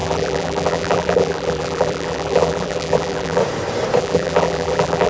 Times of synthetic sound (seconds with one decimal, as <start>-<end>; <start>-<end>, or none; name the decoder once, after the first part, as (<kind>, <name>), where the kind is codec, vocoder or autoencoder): 0.0-3.4 (vocoder, BigVGAN v2); 4.0-5.1